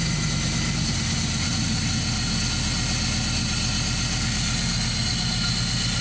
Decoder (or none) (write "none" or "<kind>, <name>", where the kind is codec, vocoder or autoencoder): none